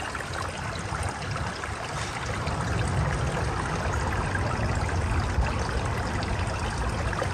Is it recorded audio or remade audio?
recorded